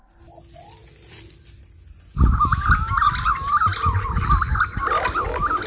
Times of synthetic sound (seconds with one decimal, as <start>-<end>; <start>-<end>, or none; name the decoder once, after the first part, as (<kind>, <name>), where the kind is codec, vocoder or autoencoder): none